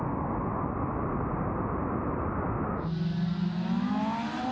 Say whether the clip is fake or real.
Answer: real